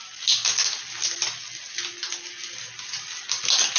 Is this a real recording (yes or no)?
yes